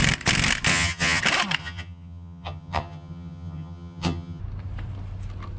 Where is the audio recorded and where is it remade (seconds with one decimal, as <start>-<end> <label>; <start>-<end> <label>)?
0.0-0.7 recorded; 0.7-1.2 remade; 1.2-1.6 recorded; 1.6-4.4 remade; 4.4-5.6 recorded